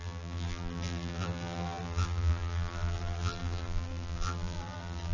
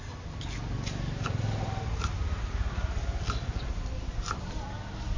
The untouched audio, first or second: second